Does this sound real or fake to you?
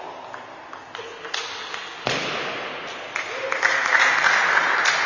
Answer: real